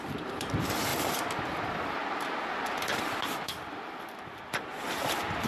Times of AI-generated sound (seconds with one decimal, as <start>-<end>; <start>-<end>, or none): 0.0-0.9; 3.2-4.7